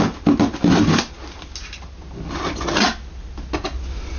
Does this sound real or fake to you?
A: real